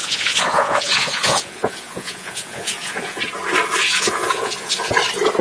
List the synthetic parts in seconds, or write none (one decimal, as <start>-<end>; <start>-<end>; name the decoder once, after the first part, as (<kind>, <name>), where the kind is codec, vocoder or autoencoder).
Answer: 0.0-3.2 (vocoder, Vocos); 3.8-4.9